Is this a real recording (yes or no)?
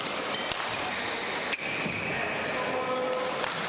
yes